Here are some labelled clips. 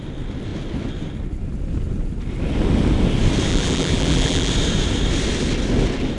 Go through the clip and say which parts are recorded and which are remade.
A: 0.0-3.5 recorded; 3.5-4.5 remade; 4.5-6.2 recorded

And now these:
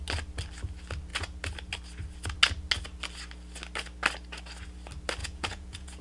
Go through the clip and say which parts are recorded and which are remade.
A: 0.0-5.2 recorded; 5.2-6.0 remade

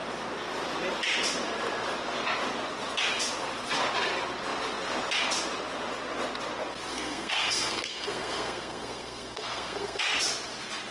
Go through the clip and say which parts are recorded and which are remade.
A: 0.0-6.9 recorded; 6.9-10.0 remade; 10.0-10.9 recorded

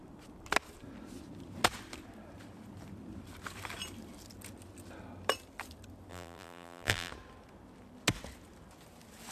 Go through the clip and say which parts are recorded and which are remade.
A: 0.0-6.1 recorded; 6.1-7.1 remade; 7.1-9.3 recorded

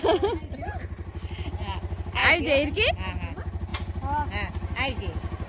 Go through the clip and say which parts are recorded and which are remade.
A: 0.0-5.5 recorded